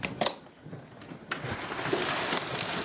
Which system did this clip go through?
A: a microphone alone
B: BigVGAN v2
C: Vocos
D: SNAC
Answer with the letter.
A